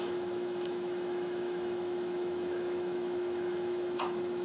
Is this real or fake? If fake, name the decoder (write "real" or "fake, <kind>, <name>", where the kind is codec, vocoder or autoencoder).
fake, autoencoder, DAC-VAE